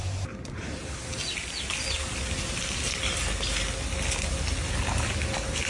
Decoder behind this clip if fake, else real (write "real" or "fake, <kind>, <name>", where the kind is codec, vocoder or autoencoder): real